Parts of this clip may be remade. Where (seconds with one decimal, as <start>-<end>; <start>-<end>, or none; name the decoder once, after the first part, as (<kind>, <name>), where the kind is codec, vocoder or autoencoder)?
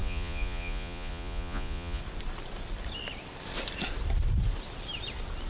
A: 0.0-2.0 (vocoder, Vocos)